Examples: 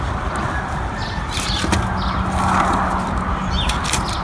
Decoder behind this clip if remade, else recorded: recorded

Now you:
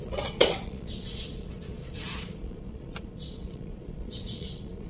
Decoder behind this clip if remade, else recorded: remade, vocoder, Vocos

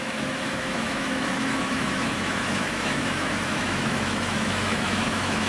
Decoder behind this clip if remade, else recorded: remade, autoencoder, DAC-VAE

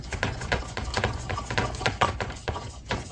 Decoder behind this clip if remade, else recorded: remade, vocoder, Vocos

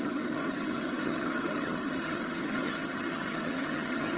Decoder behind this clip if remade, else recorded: remade, vocoder, HiFi-GAN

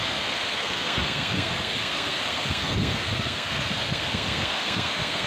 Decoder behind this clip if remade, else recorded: remade, codec, SNAC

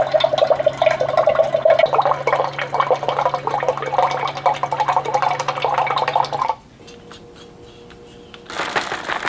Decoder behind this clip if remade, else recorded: recorded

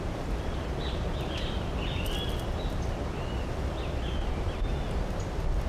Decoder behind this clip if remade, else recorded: recorded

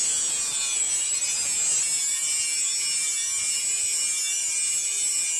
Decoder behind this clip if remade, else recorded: recorded